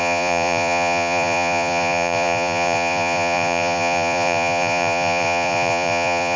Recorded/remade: remade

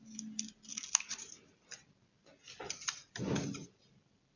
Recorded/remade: recorded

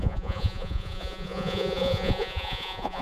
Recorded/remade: remade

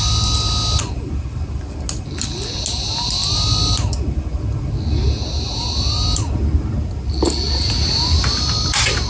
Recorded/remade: recorded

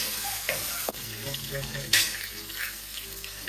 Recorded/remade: remade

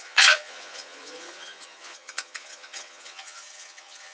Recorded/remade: remade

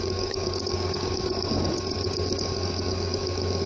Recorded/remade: remade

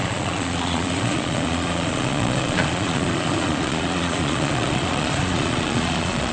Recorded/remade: remade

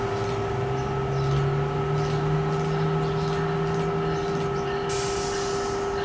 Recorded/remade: recorded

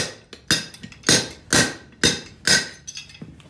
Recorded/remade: recorded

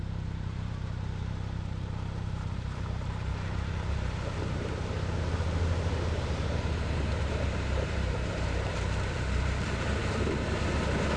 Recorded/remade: remade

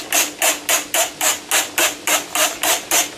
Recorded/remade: recorded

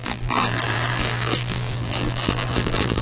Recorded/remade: remade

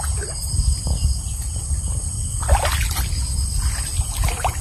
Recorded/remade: recorded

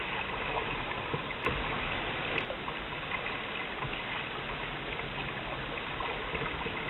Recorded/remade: recorded